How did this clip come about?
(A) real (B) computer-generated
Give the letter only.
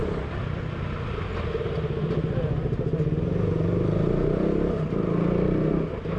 A